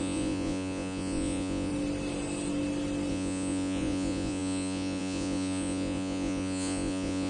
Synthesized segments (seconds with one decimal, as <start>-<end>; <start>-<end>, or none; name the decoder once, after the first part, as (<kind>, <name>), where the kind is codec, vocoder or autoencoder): 0.0-1.7 (vocoder, Vocos); 3.1-7.3